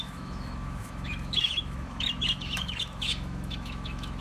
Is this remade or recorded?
remade